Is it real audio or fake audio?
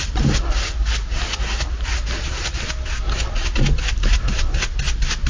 real